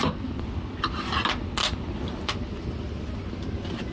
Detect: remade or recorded recorded